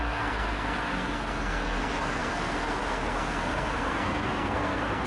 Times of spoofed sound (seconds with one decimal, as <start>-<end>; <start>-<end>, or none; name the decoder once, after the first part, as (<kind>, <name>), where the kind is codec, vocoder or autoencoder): 0.0-5.1 (codec, SNAC)